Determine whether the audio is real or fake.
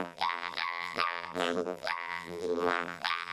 fake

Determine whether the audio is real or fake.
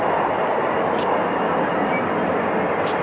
real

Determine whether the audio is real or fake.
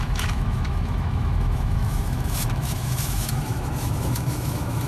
fake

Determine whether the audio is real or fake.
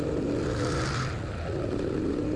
real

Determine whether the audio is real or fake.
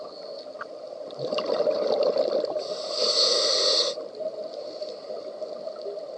real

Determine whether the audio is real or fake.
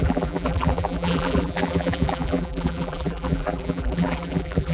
fake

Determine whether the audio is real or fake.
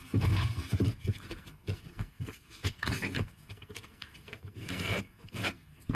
fake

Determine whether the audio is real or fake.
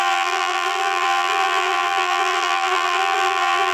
fake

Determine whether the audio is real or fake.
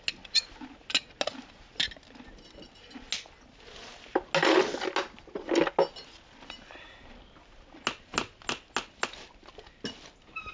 real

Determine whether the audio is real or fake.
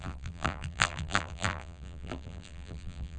fake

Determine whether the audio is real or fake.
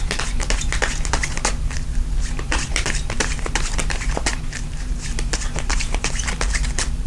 fake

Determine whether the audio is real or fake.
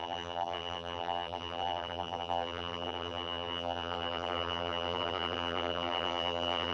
fake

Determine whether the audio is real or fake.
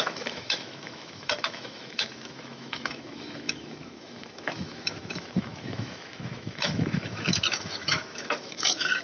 fake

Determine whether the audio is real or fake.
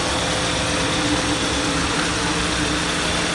real